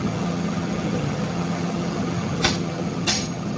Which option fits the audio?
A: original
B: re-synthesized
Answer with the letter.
B